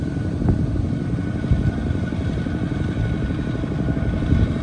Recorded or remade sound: recorded